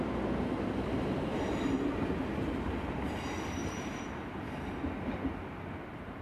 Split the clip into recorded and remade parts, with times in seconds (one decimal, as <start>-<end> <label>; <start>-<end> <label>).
0.0-3.6 recorded; 3.6-4.4 remade; 4.4-6.2 recorded